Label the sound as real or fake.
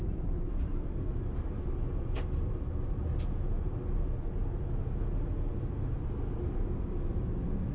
real